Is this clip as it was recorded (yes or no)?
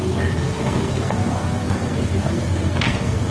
no